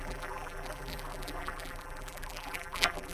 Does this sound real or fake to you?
fake